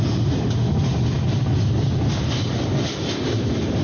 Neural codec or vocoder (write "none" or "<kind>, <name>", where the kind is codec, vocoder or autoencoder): none